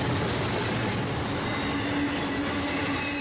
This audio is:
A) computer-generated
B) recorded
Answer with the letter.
B